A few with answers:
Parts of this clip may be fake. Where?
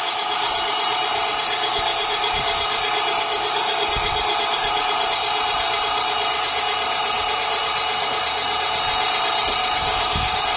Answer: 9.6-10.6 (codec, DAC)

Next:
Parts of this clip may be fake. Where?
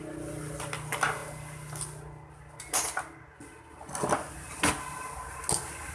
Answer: none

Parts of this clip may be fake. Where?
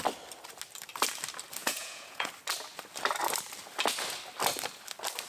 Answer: 1.6-2.3 (vocoder, Vocos)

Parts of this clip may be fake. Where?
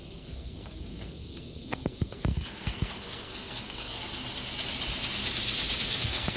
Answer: 0.0-4.0 (codec, SNAC); 5.8-6.4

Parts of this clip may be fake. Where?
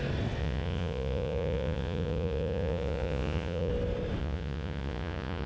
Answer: 0.4-3.7 (vocoder, Vocos); 4.2-5.5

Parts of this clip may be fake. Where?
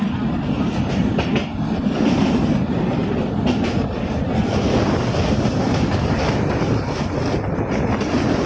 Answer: none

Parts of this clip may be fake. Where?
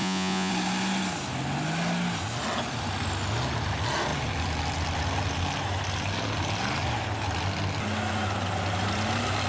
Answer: 0.0-0.5 (vocoder, Vocos)